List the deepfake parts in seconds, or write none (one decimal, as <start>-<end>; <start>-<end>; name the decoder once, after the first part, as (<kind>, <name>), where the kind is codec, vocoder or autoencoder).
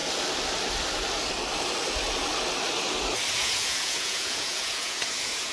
3.3-5.5 (vocoder, Vocos)